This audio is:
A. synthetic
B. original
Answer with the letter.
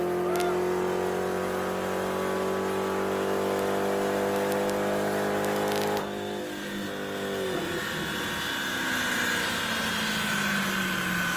B